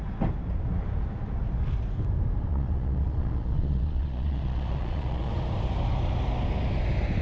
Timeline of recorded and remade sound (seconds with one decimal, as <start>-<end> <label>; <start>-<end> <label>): 0.0-2.5 recorded; 2.5-5.3 remade; 5.3-7.2 recorded